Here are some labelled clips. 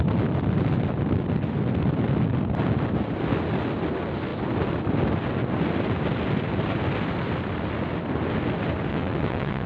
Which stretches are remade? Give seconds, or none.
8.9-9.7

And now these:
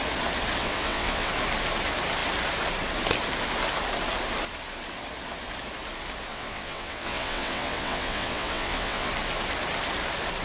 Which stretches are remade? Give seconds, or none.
0.6-1.3; 6.3-9.1